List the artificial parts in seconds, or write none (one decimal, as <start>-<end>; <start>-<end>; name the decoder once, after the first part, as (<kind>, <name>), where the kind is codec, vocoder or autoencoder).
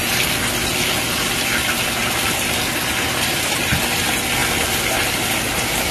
none